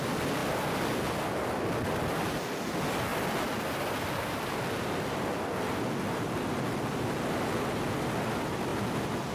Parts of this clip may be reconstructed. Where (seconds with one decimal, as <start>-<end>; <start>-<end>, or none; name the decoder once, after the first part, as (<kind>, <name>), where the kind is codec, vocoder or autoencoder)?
none